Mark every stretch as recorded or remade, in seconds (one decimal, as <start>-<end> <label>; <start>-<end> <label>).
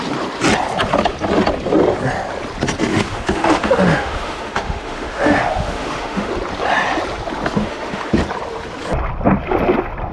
0.0-2.9 recorded; 2.9-6.3 remade; 6.3-7.6 recorded; 7.6-8.1 remade; 8.1-10.1 recorded